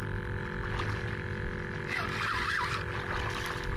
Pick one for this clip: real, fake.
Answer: real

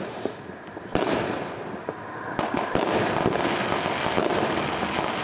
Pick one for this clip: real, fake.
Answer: real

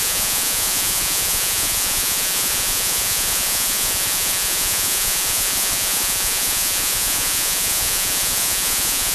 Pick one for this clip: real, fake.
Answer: fake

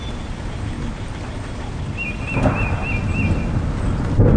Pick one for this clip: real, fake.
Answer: real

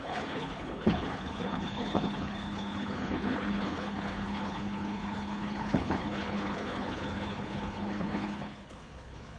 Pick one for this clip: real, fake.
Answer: fake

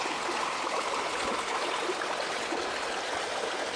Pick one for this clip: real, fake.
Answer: real